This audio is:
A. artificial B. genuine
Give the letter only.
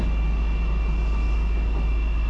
B